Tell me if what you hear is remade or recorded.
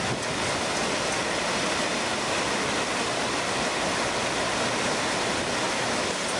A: recorded